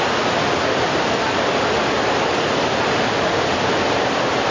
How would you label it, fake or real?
real